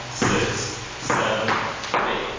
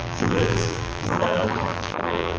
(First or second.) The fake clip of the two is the second